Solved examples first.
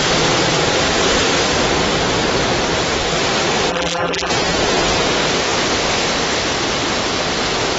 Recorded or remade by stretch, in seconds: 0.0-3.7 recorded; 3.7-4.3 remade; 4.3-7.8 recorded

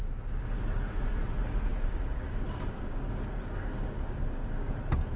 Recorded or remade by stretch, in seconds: 0.0-1.7 recorded; 1.7-4.8 remade; 4.8-5.2 recorded

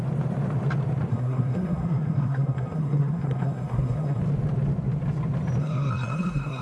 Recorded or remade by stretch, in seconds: 0.0-1.1 recorded; 1.1-4.2 remade; 4.2-5.6 recorded; 5.6-6.6 remade

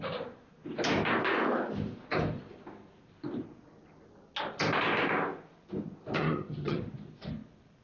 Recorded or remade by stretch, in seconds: 0.0-6.2 recorded; 6.2-6.8 remade; 6.8-7.8 recorded

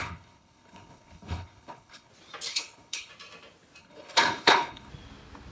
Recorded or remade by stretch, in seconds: 0.0-2.1 remade; 2.1-2.5 recorded; 2.5-3.1 remade; 3.1-3.8 recorded; 3.8-4.9 remade; 4.9-5.5 recorded